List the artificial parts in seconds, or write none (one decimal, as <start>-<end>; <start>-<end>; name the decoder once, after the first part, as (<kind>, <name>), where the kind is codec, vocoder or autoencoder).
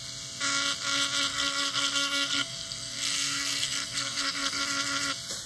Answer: 1.3-4.6 (codec, SNAC)